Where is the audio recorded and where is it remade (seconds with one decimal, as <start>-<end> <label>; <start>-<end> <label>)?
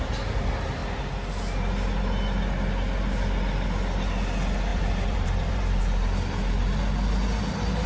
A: 0.0-4.7 recorded; 4.7-5.8 remade; 5.8-7.9 recorded